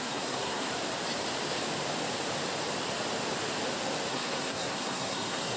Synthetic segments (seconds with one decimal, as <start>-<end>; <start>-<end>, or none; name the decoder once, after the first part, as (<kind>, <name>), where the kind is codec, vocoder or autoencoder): 0.0-0.7 (codec, SNAC); 4.1-5.6